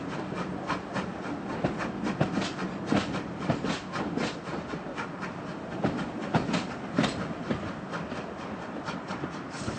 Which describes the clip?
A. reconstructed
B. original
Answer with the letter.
B